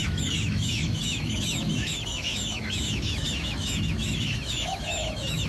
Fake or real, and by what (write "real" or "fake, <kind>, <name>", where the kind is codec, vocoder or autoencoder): fake, autoencoder, DAC-VAE